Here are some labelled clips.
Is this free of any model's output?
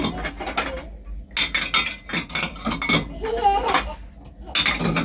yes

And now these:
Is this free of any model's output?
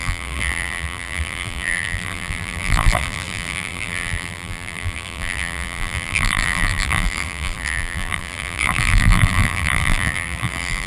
no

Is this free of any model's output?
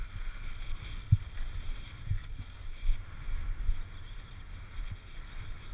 yes